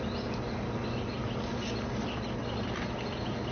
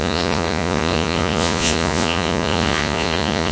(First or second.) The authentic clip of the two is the first